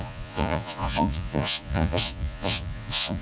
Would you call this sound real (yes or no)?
no